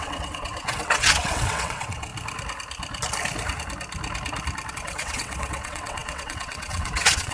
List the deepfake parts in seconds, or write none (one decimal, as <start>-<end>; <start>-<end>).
0.0-2.1; 4.7-7.3